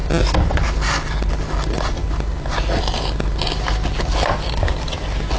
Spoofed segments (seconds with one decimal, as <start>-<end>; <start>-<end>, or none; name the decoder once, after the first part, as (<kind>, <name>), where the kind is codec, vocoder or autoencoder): none